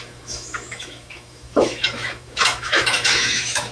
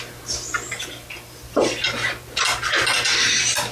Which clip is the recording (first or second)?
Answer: second